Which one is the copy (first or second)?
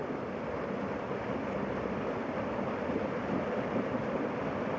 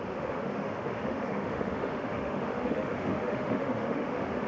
second